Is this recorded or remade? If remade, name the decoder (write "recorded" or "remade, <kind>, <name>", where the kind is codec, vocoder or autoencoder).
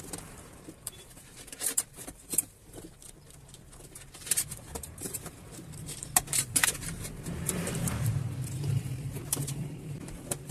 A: remade, vocoder, BigVGAN v2